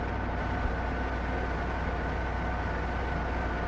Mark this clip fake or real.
real